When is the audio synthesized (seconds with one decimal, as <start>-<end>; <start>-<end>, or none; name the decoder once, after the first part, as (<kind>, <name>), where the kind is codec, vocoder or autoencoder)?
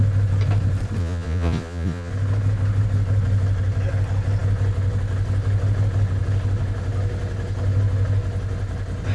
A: 1.0-2.1 (vocoder, Vocos)